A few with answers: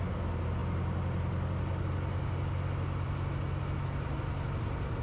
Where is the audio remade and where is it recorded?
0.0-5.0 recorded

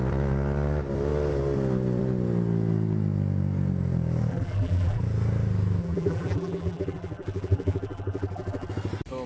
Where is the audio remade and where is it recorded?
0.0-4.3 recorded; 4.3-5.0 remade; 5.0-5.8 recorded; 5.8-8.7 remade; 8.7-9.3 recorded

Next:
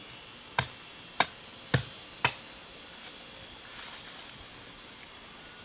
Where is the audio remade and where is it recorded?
0.0-5.6 recorded

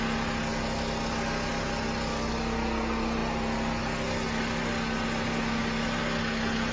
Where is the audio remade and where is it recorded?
0.0-6.7 recorded